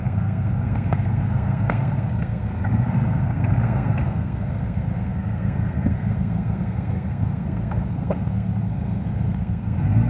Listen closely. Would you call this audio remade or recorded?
remade